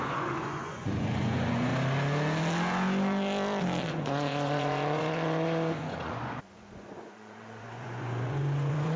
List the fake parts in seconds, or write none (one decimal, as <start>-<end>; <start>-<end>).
0.0-1.7; 3.9-9.0